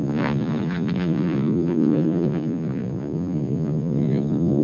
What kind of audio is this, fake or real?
fake